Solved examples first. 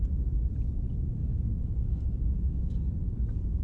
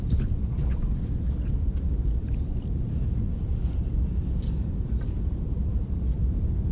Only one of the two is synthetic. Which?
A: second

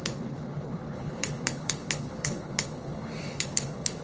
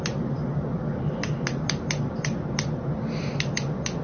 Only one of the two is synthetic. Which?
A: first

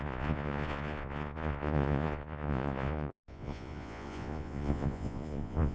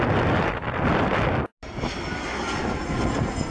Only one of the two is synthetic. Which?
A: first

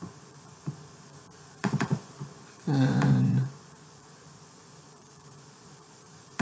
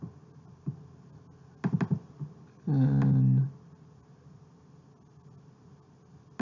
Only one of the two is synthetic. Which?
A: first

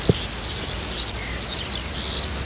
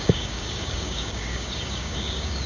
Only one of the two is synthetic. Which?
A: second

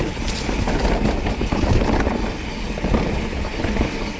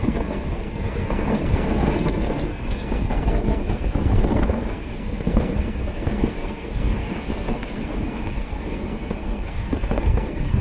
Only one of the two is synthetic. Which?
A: second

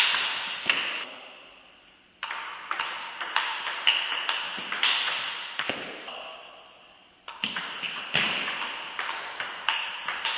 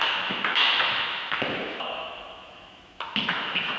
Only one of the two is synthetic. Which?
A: second